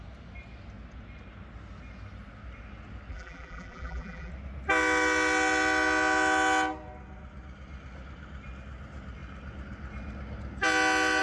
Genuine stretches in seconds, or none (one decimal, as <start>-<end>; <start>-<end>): 0.0-3.1; 4.3-11.2